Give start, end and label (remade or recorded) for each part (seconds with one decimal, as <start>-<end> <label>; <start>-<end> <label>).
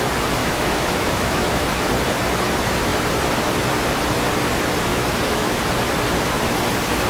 0.0-0.4 recorded; 0.4-1.9 remade; 1.9-4.9 recorded; 4.9-5.6 remade; 5.6-7.1 recorded